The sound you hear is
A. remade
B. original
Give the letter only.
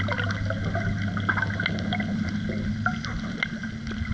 B